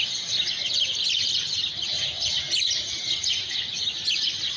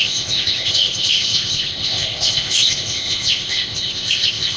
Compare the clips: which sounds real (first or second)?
first